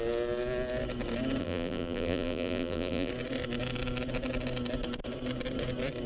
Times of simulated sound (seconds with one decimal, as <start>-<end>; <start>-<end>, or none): 1.4-3.1